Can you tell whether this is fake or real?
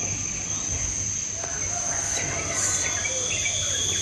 real